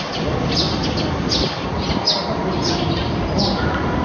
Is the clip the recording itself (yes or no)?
yes